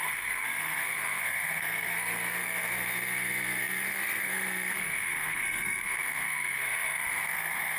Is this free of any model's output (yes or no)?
no